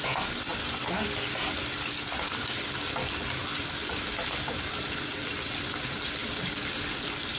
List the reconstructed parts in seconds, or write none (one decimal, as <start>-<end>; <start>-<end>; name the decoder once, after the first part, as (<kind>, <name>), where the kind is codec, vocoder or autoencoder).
none